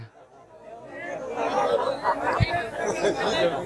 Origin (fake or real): real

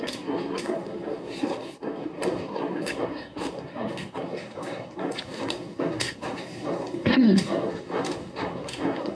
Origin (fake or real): fake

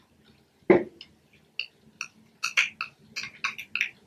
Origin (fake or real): real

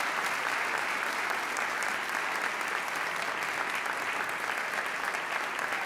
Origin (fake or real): real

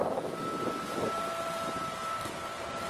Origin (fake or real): real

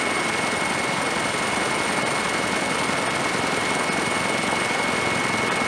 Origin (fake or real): real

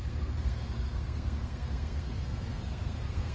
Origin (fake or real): fake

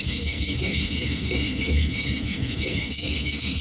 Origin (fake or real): fake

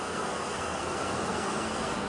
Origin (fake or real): fake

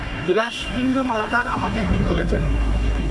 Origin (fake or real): fake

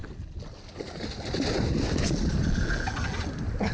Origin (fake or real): real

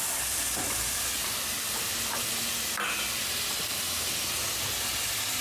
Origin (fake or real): real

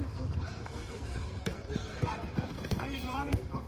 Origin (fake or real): fake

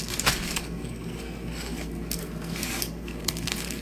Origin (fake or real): fake